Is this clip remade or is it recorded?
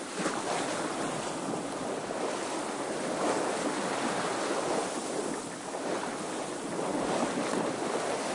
recorded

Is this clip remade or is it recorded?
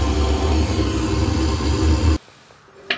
recorded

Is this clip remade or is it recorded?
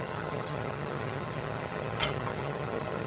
remade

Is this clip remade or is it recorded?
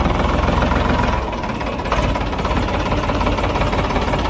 remade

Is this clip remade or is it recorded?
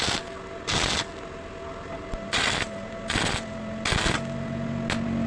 recorded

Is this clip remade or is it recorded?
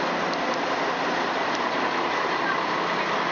recorded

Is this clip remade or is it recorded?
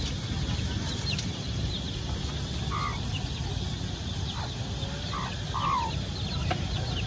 recorded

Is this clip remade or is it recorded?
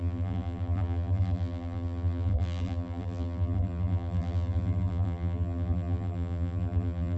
remade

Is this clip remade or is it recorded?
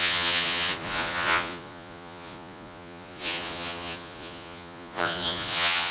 remade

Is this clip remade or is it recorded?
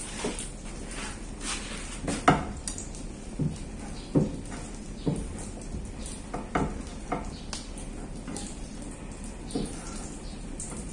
recorded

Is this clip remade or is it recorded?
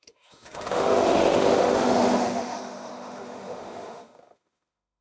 remade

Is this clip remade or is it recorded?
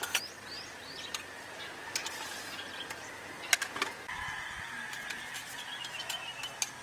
recorded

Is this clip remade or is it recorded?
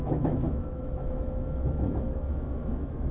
remade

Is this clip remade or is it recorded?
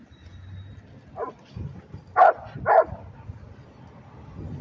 recorded